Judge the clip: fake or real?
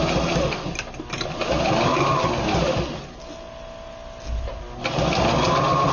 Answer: real